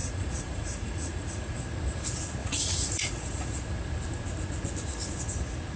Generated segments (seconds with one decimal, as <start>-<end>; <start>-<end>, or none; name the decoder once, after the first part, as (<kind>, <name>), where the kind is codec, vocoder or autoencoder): 0.0-1.6 (vocoder, Vocos); 2.4-3.6